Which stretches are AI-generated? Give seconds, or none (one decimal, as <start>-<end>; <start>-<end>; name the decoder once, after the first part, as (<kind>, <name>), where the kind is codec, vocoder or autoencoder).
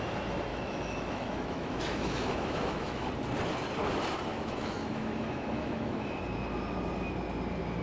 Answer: 0.5-3.1 (autoencoder, DAC-VAE); 4.3-6.2